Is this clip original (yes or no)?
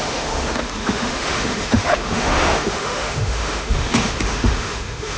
no